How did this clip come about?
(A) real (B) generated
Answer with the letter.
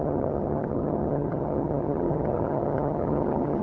B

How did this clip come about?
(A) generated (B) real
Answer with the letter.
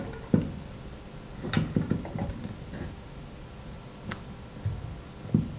B